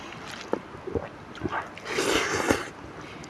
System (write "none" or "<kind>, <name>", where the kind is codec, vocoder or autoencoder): none